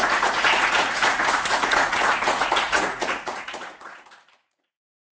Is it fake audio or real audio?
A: fake